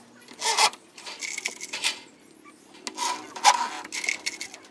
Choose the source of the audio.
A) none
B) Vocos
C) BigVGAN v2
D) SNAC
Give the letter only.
A